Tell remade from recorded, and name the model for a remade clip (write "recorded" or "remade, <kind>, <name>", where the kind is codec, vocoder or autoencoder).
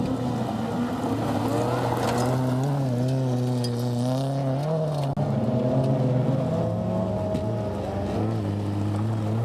recorded